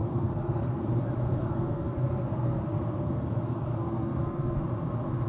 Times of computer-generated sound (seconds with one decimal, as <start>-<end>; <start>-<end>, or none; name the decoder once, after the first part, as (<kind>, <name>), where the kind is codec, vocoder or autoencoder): 0.0-0.8 (codec, SNAC); 1.4-4.6

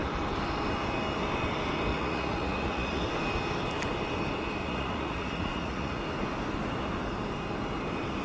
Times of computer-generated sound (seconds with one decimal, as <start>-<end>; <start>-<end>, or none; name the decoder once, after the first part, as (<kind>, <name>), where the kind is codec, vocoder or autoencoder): 1.9-3.0 (vocoder, Vocos); 4.6-6.0

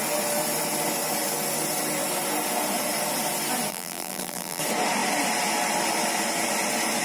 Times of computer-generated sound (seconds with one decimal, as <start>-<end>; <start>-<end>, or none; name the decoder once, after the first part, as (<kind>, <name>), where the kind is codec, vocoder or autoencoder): 3.7-4.6 (vocoder, BigVGAN v2)

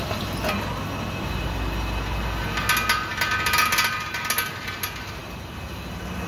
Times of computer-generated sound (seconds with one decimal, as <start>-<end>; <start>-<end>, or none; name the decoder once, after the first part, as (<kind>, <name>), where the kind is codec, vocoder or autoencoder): none

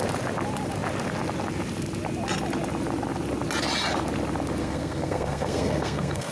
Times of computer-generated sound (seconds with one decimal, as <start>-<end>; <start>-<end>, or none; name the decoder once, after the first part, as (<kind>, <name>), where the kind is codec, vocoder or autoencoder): 4.6-6.3 (codec, SNAC)

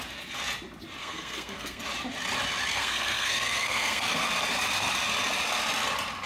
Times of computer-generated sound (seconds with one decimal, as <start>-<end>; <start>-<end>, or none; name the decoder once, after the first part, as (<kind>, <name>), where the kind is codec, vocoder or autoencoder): 1.0-1.8 (codec, SNAC); 2.7-4.2

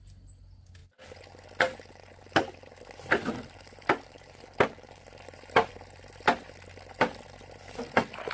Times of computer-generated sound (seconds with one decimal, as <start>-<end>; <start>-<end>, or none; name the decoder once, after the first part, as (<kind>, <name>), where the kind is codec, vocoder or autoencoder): none

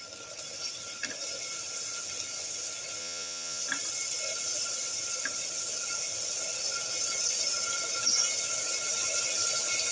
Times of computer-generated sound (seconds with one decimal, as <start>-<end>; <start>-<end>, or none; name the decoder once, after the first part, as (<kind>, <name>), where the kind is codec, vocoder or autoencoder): 3.0-3.6 (vocoder, Vocos)